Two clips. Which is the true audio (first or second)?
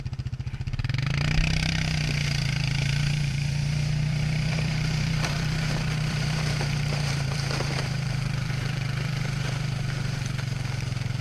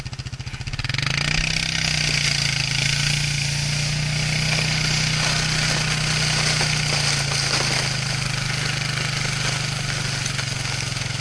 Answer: second